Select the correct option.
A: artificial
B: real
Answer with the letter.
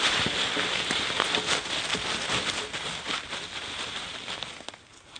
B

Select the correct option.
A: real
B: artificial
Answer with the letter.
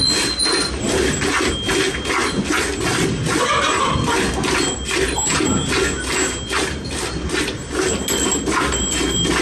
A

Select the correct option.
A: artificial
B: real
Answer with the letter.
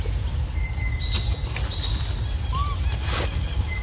B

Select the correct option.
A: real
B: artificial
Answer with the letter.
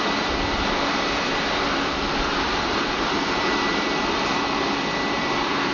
B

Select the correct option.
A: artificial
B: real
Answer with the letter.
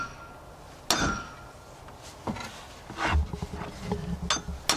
B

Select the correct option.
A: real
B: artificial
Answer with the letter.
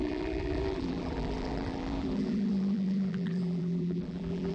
B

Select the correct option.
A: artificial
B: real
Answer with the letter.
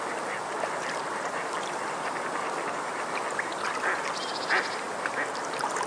A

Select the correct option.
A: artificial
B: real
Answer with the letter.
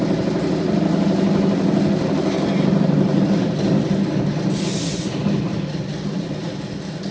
B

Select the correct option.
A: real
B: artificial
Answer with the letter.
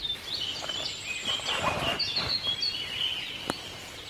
A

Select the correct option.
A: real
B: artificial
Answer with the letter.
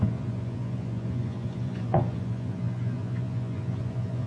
B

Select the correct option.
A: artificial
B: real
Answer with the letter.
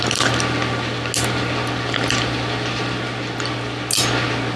B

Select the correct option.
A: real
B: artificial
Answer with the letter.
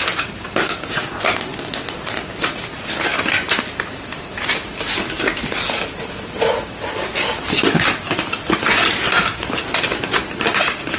A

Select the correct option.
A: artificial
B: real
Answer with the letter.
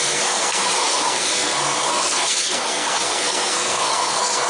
A